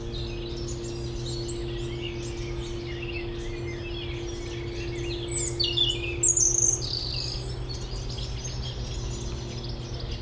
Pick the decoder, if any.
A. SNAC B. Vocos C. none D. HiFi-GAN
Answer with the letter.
C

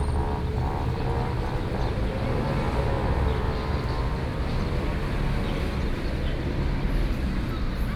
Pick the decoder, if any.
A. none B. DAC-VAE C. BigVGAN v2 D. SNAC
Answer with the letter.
A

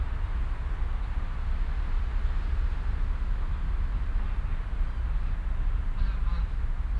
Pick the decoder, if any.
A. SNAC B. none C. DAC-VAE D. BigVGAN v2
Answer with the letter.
B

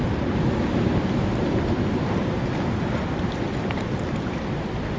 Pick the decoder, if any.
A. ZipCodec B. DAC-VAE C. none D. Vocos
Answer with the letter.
C